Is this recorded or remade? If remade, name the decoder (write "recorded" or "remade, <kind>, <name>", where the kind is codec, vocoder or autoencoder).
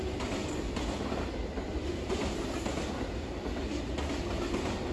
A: recorded